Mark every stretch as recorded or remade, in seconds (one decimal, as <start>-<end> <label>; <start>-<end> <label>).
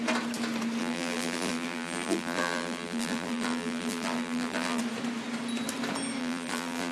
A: 0.0-0.8 recorded; 0.8-4.8 remade; 4.8-6.2 recorded; 6.2-6.9 remade